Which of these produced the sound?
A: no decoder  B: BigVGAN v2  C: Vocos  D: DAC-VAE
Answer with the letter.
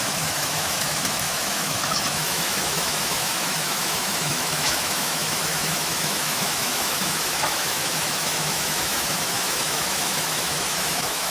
D